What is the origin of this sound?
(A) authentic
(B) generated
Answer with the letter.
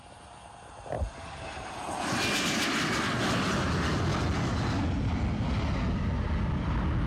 A